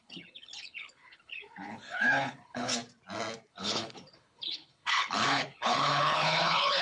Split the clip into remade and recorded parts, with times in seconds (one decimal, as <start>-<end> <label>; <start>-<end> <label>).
0.0-2.7 remade; 2.7-3.5 recorded; 3.5-6.8 remade

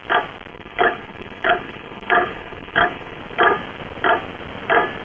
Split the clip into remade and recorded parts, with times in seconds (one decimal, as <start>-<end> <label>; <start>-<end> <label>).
0.0-0.5 recorded; 0.5-3.2 remade; 3.2-5.0 recorded

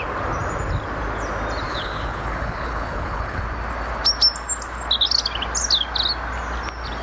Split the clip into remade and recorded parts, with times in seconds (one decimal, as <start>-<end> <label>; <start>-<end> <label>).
0.0-1.7 recorded; 1.7-3.4 remade; 3.4-7.0 recorded

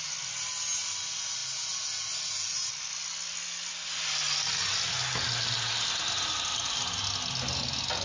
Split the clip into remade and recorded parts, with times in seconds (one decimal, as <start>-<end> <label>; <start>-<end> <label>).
0.0-8.0 recorded

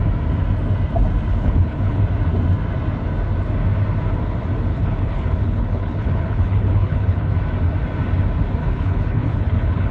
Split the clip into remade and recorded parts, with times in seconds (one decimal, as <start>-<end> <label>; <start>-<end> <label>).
0.0-1.3 recorded; 1.3-2.0 remade; 2.0-4.7 recorded; 4.7-7.3 remade; 7.3-8.6 recorded; 8.6-9.9 remade

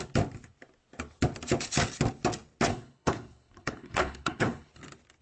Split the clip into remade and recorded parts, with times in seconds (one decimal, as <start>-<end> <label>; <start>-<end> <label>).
0.0-2.7 recorded; 2.7-4.7 remade; 4.7-5.2 recorded